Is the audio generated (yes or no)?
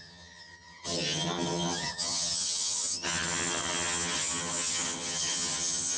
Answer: yes